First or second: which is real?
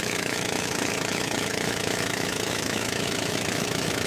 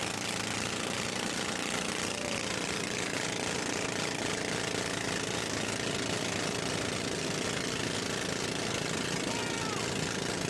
second